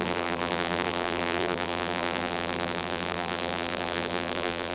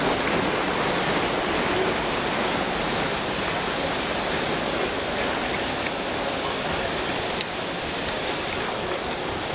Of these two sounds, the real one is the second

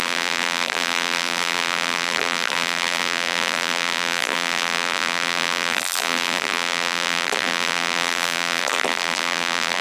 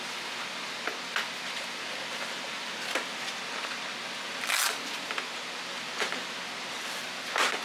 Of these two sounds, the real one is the second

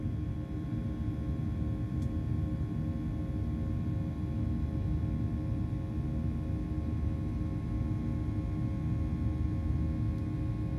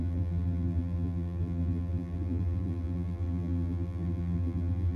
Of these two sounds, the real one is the first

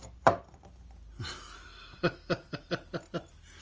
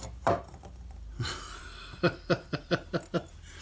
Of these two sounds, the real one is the first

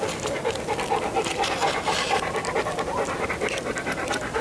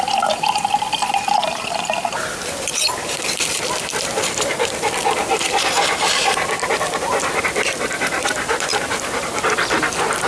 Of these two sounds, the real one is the first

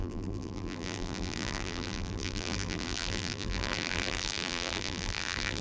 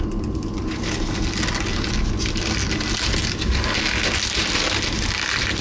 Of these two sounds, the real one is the second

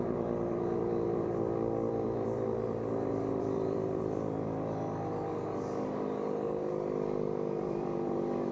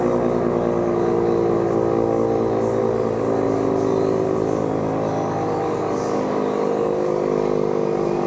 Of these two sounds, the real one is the second